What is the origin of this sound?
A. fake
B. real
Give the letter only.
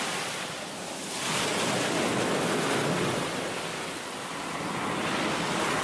B